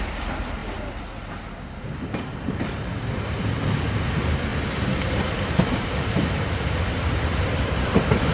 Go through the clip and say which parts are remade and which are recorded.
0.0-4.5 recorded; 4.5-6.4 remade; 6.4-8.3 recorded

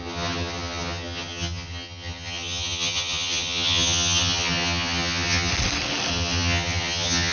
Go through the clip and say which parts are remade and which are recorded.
0.0-5.5 remade; 5.5-6.1 recorded; 6.1-7.3 remade

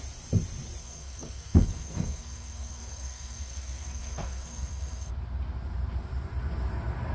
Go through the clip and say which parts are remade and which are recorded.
0.0-0.8 recorded; 0.8-5.1 remade; 5.1-7.1 recorded